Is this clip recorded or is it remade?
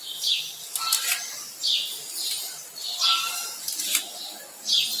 recorded